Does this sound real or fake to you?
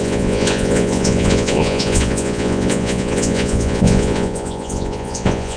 fake